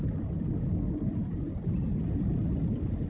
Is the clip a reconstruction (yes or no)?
no